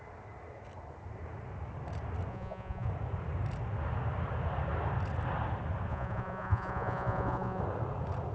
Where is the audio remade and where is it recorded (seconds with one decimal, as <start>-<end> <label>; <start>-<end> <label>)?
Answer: 0.0-2.3 recorded; 2.3-2.9 remade; 2.9-5.9 recorded; 5.9-7.6 remade; 7.6-8.3 recorded